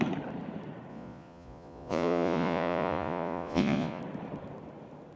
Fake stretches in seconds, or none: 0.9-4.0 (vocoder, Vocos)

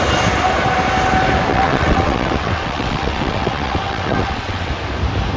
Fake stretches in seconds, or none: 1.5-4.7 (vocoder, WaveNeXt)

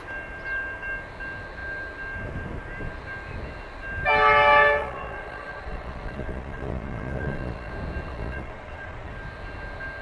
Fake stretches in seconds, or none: 4.8-7.7 (vocoder, Vocos); 8.1-9.1

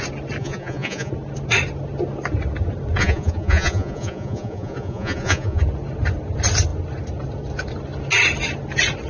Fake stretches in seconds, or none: 0.4-1.1 (vocoder, Vocos); 3.0-5.6

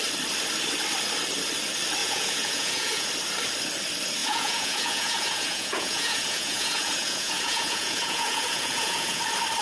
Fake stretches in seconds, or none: 2.0-3.1 (vocoder, Vocos); 4.2-9.2

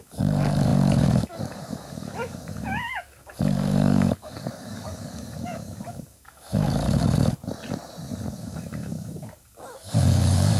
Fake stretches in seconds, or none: 0.0-7.4 (codec, DAC); 8.3-10.6

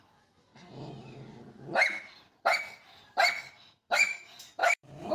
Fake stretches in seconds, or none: 0.0-0.5 (autoencoder, DAC-VAE); 3.6-5.1